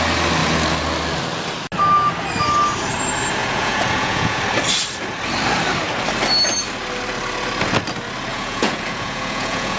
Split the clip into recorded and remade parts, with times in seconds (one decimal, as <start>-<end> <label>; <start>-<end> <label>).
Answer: 0.0-3.4 recorded; 3.4-4.4 remade; 4.4-8.3 recorded; 8.3-9.8 remade